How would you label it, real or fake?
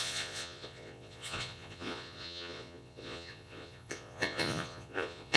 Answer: fake